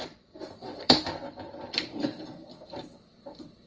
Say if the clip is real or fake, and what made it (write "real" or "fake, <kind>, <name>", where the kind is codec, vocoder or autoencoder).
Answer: fake, vocoder, BigVGAN v2